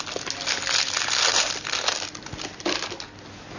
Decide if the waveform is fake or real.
real